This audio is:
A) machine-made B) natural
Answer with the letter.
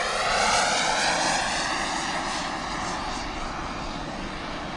B